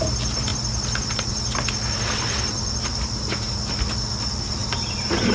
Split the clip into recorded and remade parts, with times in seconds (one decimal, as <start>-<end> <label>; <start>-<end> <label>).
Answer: 0.0-2.9 recorded; 2.9-3.6 remade; 3.6-4.6 recorded; 4.6-5.3 remade